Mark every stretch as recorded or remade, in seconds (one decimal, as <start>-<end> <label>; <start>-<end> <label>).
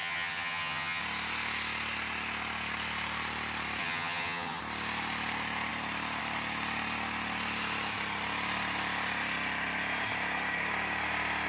0.0-1.0 remade; 1.0-3.8 recorded; 3.8-4.6 remade; 4.6-11.5 recorded